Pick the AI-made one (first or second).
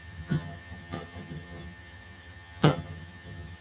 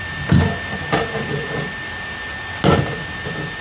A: first